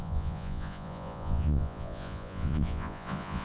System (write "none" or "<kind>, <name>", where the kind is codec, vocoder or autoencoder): vocoder, Vocos